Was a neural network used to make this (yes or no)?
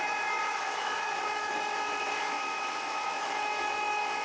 yes